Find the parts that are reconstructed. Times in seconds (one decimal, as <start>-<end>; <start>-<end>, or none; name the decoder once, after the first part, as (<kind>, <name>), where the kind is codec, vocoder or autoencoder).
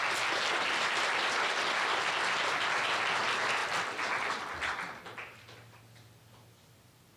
none